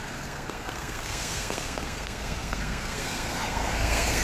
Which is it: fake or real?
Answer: fake